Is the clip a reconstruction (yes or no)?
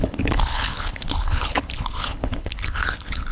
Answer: yes